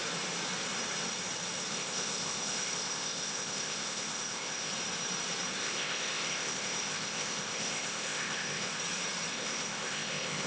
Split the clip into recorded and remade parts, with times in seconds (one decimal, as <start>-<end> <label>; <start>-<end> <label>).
0.0-1.7 recorded; 1.7-4.7 remade; 4.7-5.6 recorded; 5.6-8.8 remade; 8.8-9.3 recorded; 9.3-10.5 remade